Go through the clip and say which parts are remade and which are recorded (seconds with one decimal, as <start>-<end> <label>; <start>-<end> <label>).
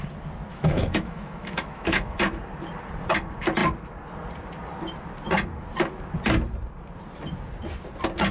0.0-0.5 recorded; 0.5-2.4 remade; 2.4-8.3 recorded